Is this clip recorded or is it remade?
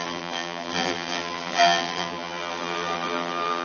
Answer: remade